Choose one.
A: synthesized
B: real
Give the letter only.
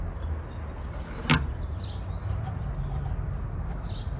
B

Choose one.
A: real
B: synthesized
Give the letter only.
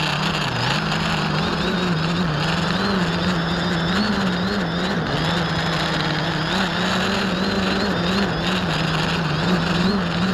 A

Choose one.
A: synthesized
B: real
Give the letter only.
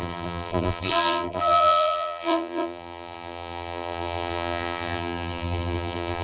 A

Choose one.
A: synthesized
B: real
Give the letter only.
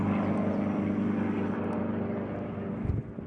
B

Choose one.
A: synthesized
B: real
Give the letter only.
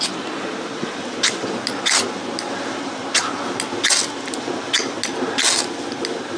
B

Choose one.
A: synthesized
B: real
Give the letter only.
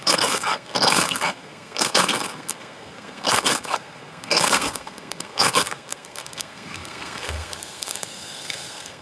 A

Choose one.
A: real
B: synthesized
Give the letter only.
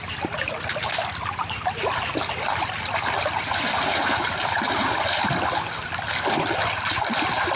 A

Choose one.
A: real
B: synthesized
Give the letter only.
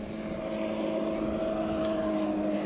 A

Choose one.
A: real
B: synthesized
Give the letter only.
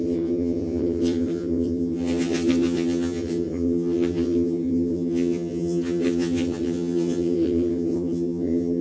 B